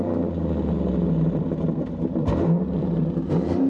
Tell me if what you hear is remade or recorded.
remade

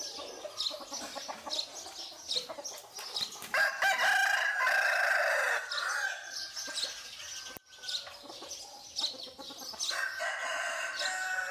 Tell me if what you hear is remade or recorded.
recorded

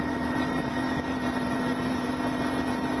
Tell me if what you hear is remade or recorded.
remade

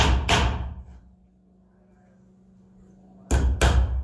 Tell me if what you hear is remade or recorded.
recorded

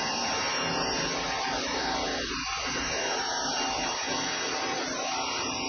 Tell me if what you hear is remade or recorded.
recorded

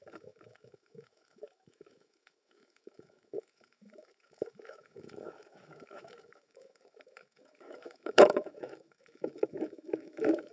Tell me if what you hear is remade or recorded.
remade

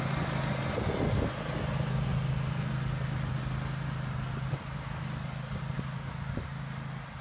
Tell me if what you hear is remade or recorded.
recorded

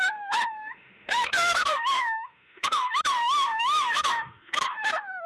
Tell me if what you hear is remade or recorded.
remade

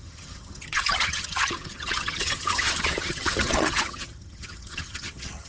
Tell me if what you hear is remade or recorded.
remade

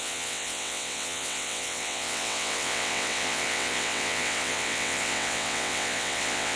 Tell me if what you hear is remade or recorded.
remade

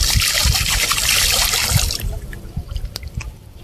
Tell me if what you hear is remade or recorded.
recorded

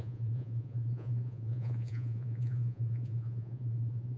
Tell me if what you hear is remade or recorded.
remade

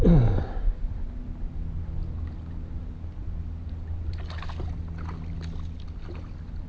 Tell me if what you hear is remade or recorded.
recorded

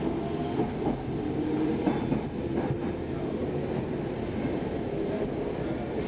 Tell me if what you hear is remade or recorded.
recorded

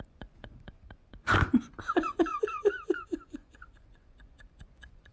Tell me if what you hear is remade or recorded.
remade